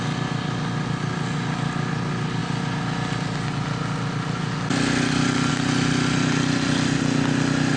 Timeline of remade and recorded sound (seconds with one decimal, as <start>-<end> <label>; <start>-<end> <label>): 0.0-7.8 recorded